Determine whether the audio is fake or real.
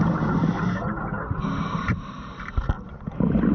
real